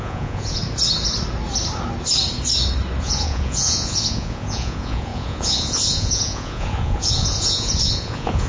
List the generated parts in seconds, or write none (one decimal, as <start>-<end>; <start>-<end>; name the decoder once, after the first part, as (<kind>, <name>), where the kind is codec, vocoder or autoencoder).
0.0-0.6 (vocoder, Vocos); 3.0-8.5